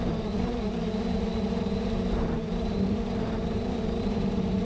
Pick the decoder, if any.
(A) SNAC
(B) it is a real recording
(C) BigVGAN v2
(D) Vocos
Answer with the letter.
C